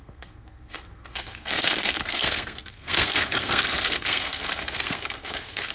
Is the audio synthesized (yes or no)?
yes